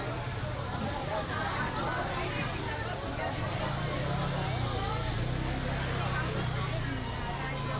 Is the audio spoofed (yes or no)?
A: no